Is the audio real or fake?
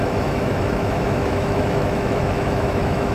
fake